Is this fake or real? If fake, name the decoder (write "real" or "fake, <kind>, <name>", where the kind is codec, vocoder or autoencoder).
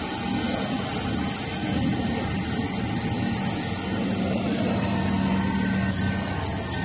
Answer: real